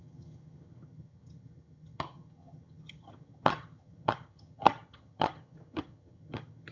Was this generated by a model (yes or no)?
yes